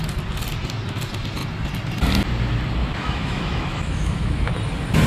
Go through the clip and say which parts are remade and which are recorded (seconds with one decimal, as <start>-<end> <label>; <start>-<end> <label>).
0.0-2.8 recorded; 2.8-4.5 remade; 4.5-5.1 recorded